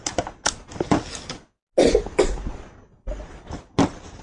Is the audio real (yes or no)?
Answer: yes